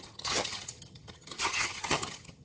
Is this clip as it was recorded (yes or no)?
no